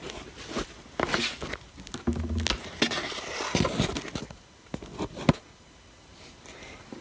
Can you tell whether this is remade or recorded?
recorded